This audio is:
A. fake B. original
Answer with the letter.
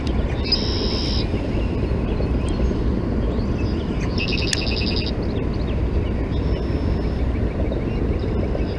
B